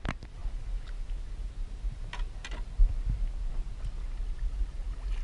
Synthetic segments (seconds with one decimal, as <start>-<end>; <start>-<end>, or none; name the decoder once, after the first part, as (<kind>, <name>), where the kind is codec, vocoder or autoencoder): none

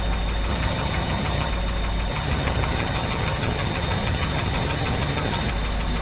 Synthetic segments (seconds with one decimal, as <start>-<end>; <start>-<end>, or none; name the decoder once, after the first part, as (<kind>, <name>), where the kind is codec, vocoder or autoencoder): 0.5-1.5 (vocoder, HiFi-GAN); 2.1-5.5

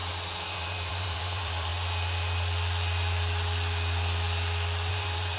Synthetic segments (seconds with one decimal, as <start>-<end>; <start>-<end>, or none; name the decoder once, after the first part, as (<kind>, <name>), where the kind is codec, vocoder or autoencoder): 0.5-1.7 (vocoder, BigVGAN v2); 4.9-5.4

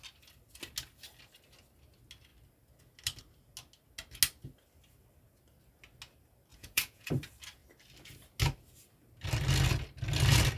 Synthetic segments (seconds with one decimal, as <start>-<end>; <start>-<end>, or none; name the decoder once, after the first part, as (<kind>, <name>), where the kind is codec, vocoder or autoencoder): 6.5-7.1 (vocoder, Vocos)

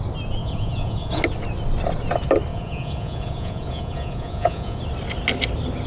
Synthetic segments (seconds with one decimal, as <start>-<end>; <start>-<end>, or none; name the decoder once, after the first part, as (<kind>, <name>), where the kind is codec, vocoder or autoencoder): 0.4-1.2 (vocoder, Vocos); 2.5-4.8

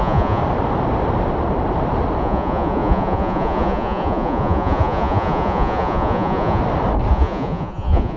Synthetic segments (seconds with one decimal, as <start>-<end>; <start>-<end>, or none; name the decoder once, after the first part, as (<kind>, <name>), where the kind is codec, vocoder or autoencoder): 0.0-0.4 (vocoder, Vocos); 2.2-6.6; 7.1-8.2

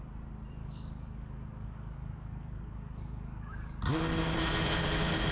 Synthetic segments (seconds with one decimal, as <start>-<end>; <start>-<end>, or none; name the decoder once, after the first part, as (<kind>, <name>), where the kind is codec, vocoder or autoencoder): 0.6-3.8 (codec, DAC)

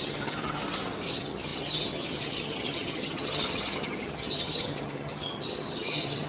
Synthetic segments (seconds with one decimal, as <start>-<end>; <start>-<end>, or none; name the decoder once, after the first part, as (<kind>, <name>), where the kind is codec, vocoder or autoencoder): 0.0-0.6 (vocoder, HiFi-GAN); 1.1-6.3